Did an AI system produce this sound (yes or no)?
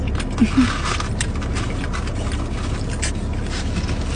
no